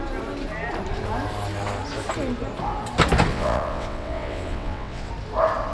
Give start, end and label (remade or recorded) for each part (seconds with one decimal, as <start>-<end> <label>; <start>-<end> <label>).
0.0-3.3 recorded; 3.3-5.1 remade; 5.1-5.7 recorded